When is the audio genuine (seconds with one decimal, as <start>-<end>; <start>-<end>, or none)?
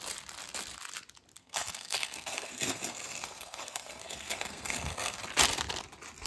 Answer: 0.0-1.4; 5.2-6.3